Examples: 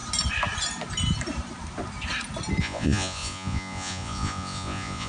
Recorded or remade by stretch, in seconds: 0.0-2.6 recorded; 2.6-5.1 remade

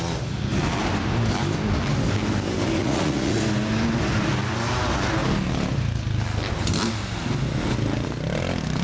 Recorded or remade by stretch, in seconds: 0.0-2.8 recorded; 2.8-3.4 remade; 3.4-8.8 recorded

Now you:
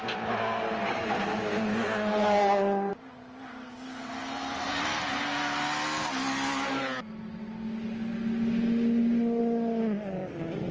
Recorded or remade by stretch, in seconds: 0.0-10.7 recorded

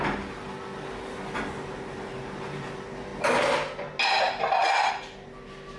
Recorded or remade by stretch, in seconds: 0.0-5.8 recorded

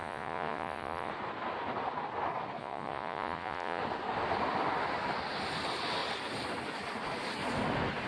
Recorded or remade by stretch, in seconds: 0.0-1.1 remade; 1.1-2.6 recorded; 2.6-3.8 remade; 3.8-8.1 recorded

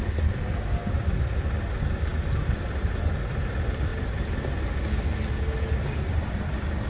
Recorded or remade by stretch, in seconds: 0.0-6.9 recorded